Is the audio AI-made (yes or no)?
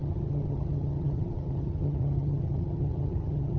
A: yes